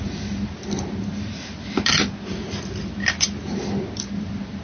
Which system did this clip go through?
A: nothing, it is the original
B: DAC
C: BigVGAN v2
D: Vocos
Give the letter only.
A